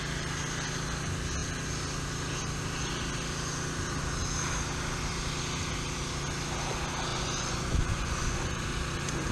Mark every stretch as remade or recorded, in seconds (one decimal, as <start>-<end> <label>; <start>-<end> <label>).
0.0-7.1 recorded; 7.1-8.6 remade; 8.6-9.3 recorded